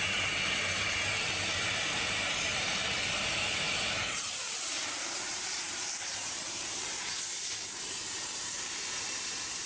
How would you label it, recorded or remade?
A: remade